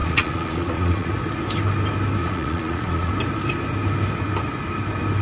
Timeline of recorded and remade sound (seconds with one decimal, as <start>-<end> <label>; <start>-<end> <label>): 0.0-1.1 remade; 1.1-2.2 recorded; 2.2-3.1 remade; 3.1-5.2 recorded